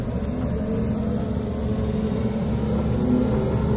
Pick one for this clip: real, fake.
real